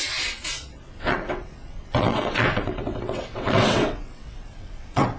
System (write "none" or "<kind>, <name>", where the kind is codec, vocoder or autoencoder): vocoder, WaveNeXt